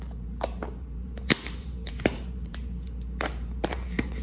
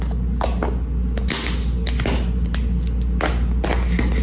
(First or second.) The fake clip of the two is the first